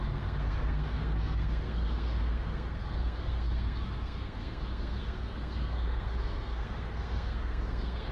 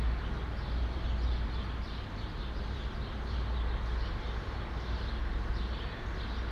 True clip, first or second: second